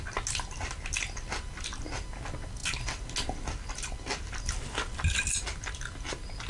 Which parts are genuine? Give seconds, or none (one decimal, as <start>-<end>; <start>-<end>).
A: 0.0-6.5